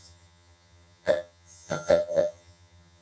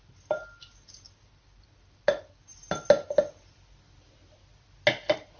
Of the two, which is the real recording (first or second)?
second